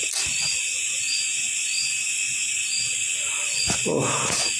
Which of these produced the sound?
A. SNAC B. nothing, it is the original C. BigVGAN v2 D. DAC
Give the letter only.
B